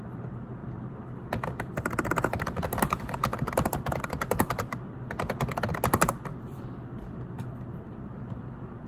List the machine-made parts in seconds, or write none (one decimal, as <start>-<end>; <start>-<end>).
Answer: 0.6-5.1; 6.3-8.9